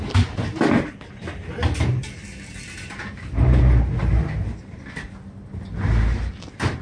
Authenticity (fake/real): real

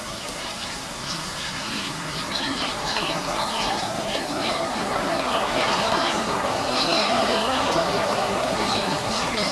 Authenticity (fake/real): fake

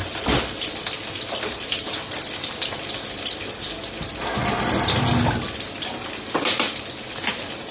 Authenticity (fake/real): real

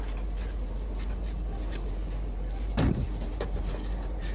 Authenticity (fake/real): real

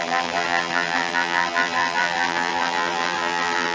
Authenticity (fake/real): fake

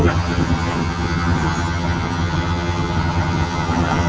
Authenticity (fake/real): fake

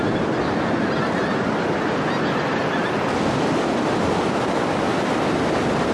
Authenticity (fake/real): real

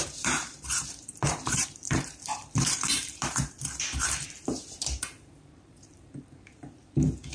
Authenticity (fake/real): fake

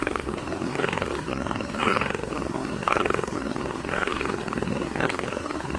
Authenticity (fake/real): fake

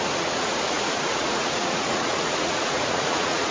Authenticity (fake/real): fake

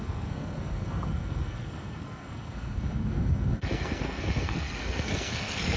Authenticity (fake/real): fake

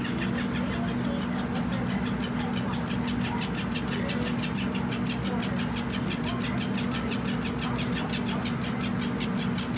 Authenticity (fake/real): real